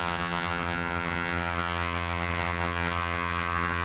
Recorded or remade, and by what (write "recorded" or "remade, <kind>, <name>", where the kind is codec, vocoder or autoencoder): remade, vocoder, HiFi-GAN